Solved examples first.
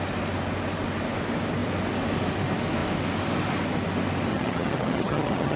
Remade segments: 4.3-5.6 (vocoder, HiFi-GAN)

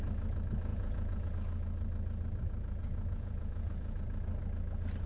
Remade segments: 0.7-1.3 (vocoder, Vocos); 2.8-4.2

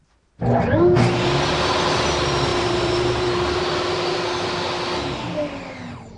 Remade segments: 2.5-3.3 (vocoder, BigVGAN v2)

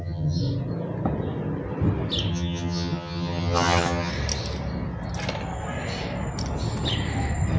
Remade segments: 0.0-0.4 (vocoder, HiFi-GAN); 2.3-4.1

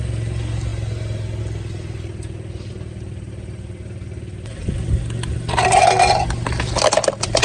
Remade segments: none

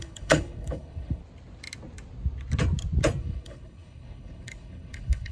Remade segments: 0.0-1.2 (codec, HILCodec); 3.2-5.3

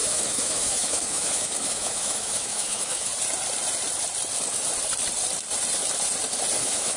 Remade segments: 0.0-3.1 (autoencoder, DAC-VAE); 6.6-7.0

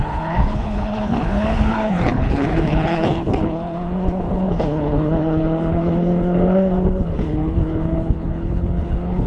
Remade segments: 0.0-9.3 (codec, HILCodec)